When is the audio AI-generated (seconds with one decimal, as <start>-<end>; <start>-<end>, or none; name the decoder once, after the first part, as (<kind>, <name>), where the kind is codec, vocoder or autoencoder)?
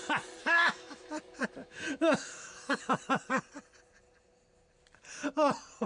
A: 0.4-1.1 (autoencoder, DAC-VAE); 1.6-2.8